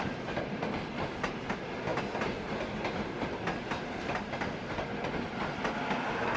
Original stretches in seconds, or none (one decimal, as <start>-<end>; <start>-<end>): 0.0-6.4